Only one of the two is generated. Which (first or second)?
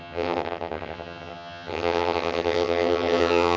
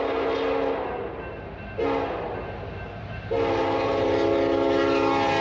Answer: first